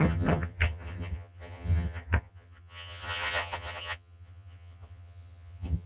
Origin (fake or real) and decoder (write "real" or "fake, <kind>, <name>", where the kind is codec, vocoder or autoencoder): fake, vocoder, HiFi-GAN